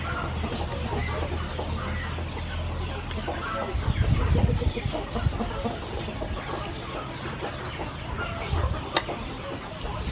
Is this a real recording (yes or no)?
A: yes